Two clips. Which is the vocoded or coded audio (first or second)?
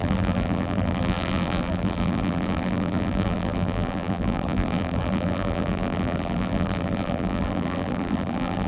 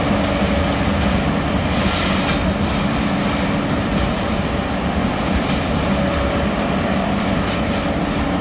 first